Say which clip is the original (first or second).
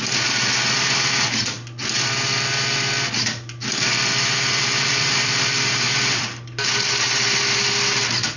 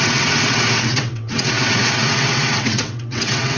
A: first